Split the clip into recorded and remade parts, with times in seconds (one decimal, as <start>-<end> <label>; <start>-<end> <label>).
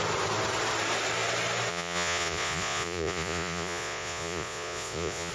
0.0-1.7 recorded; 1.7-5.3 remade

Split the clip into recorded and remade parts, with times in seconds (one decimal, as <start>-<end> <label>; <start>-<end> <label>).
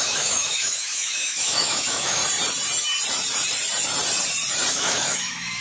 0.0-2.2 remade; 2.2-4.7 recorded; 4.7-5.6 remade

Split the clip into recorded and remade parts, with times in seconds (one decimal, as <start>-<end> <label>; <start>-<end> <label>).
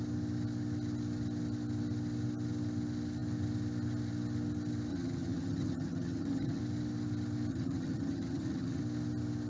0.0-4.9 recorded; 4.9-6.6 remade; 6.6-7.5 recorded; 7.5-8.8 remade; 8.8-9.5 recorded